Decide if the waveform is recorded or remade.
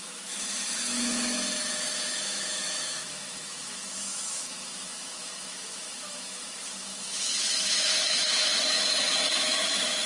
remade